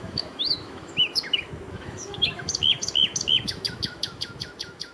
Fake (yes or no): yes